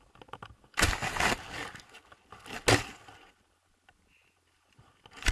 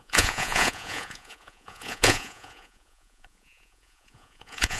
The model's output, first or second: second